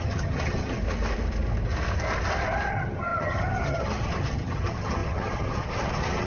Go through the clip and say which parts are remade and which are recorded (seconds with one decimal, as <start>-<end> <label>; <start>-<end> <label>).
0.0-0.8 remade; 0.8-2.7 recorded; 2.7-6.3 remade